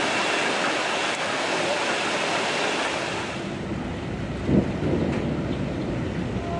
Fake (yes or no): no